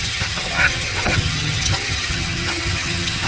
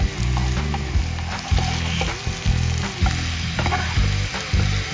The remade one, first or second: first